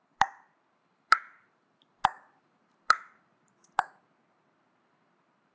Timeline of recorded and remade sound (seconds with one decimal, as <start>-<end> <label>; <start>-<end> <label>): 0.0-5.5 remade